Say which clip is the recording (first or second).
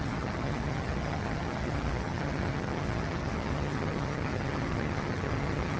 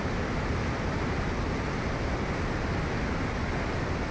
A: second